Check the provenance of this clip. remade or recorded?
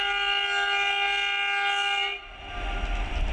recorded